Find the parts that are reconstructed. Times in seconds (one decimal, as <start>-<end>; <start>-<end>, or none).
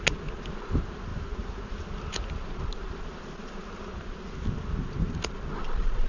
none